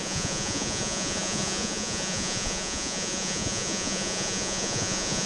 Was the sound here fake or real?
fake